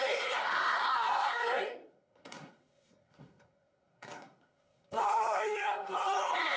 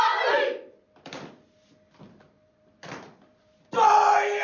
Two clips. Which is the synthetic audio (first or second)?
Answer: first